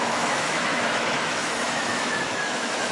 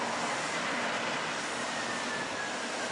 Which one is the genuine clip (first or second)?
second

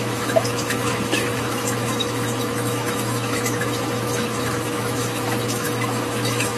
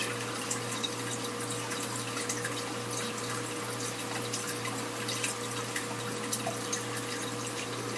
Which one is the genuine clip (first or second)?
second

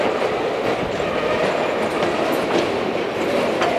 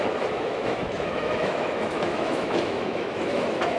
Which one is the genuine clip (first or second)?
first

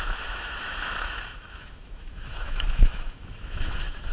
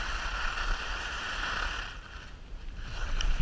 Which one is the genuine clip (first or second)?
second